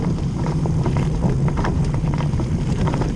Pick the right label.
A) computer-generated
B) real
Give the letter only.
A